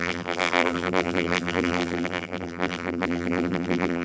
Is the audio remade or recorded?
remade